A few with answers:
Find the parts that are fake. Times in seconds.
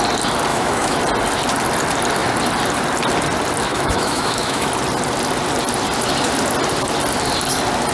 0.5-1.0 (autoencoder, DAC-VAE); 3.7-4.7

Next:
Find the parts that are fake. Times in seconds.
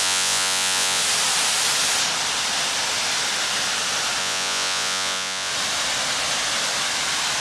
0.0-1.0 (vocoder, Vocos); 4.2-5.5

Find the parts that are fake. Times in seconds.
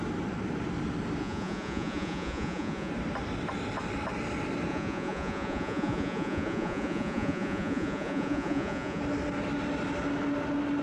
1.2-2.9 (vocoder, Vocos); 4.7-9.0